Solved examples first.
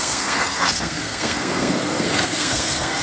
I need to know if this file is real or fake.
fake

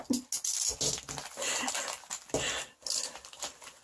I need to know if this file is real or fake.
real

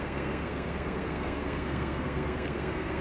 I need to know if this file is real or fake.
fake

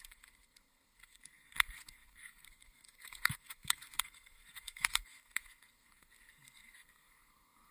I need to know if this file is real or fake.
fake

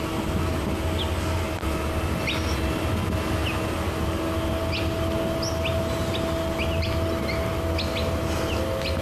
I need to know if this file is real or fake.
real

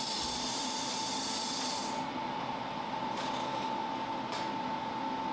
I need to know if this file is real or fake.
real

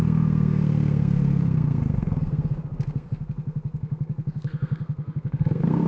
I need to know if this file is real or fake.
fake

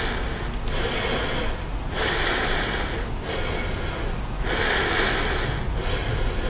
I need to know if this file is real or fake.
real